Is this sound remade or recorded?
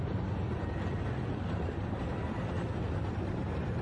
remade